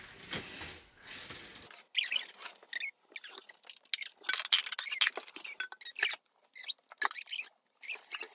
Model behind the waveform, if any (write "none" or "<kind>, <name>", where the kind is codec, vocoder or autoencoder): none